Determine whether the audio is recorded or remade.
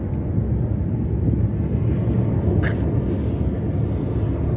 recorded